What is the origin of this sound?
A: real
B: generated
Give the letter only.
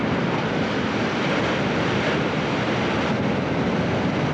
A